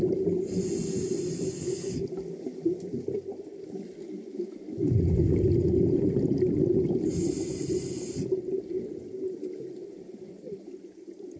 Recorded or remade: recorded